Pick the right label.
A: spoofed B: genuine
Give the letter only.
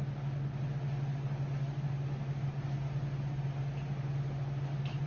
B